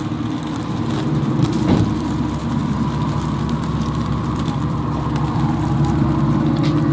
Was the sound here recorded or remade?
remade